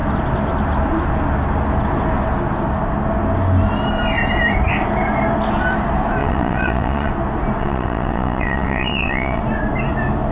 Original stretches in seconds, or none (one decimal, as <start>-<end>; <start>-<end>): 0.0-6.2; 7.1-7.6; 9.4-10.3